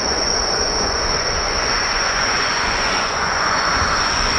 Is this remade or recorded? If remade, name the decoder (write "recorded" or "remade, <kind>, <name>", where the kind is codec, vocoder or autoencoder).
remade, vocoder, Vocos